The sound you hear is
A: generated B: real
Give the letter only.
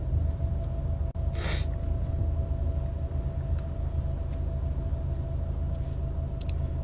B